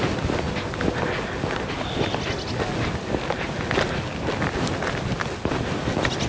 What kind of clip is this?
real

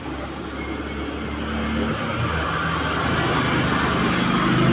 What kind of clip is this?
real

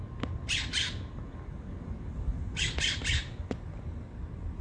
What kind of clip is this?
real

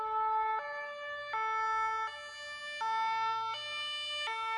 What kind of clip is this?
real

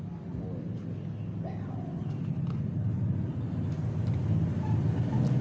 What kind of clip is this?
real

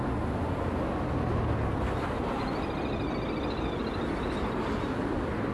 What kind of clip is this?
real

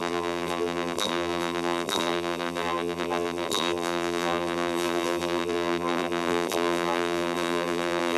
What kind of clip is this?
fake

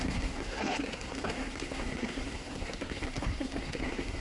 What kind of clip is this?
fake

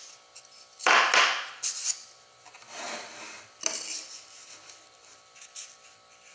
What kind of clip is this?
real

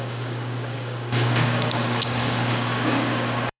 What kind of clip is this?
fake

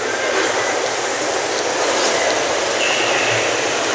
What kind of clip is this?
real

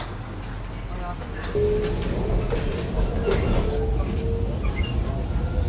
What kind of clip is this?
real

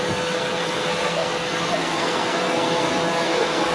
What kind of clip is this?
fake